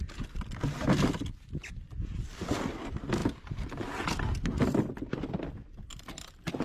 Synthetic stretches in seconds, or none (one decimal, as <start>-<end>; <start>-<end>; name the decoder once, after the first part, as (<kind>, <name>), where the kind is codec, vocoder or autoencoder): none